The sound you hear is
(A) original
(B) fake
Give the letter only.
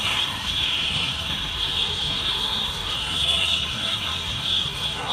B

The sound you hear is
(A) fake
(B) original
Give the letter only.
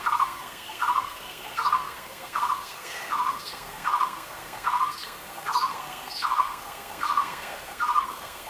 A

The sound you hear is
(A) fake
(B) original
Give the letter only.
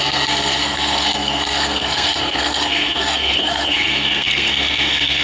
A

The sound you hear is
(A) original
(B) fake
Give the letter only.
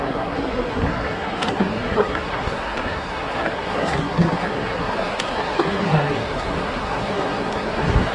B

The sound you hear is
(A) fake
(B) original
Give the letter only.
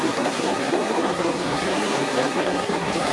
A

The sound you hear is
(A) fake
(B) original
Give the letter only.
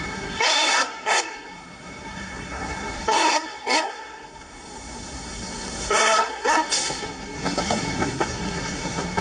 A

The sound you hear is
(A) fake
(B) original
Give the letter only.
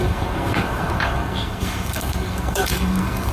A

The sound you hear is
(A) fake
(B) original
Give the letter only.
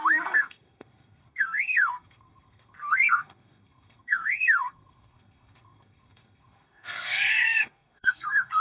A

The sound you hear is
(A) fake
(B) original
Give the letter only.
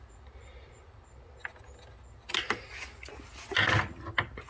B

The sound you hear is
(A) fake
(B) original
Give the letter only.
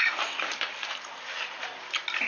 B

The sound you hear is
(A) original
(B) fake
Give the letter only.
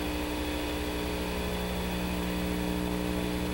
A